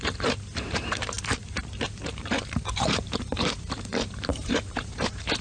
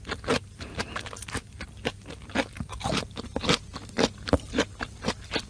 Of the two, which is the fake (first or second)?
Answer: first